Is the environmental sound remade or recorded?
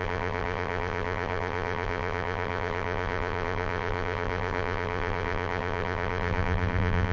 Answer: remade